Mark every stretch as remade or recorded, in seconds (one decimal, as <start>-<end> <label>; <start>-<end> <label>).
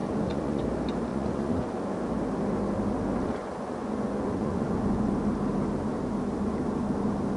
0.0-0.6 remade; 0.6-1.1 recorded; 1.1-1.9 remade; 1.9-3.2 recorded; 3.2-5.1 remade; 5.1-7.4 recorded